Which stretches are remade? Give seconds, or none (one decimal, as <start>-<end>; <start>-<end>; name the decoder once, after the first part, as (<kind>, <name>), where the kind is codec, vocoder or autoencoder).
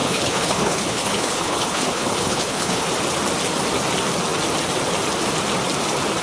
0.0-2.9 (codec, HILCodec)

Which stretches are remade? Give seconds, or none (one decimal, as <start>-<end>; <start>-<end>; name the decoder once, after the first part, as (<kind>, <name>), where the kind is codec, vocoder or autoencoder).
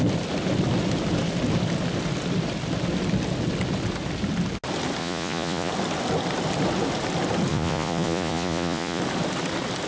5.0-5.7 (vocoder, Vocos); 7.5-9.0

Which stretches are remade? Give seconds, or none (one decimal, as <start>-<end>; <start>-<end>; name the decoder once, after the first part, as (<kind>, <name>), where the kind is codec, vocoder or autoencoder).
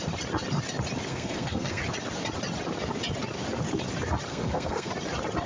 1.1-1.8 (codec, SNAC); 4.3-4.9